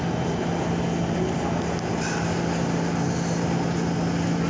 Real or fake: real